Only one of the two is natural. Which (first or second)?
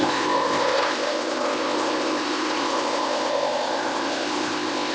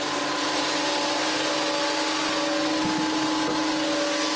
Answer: second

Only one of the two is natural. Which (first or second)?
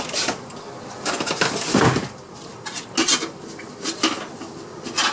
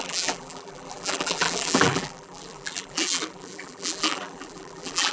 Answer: first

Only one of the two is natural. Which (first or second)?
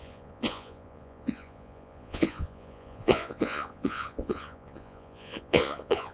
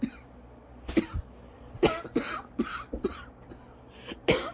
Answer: second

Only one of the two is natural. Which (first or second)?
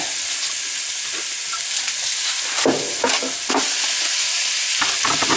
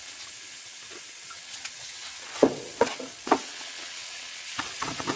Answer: first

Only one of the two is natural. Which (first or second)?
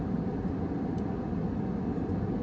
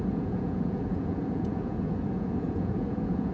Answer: first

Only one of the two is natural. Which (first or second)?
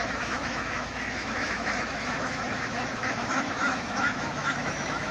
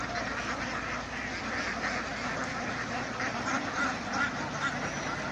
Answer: second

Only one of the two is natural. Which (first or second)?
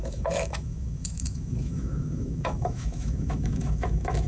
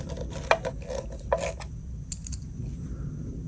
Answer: second